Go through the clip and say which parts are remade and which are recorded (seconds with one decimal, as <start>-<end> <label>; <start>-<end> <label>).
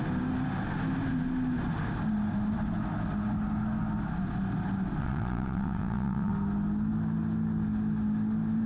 0.0-5.0 recorded; 5.0-6.3 remade; 6.3-8.7 recorded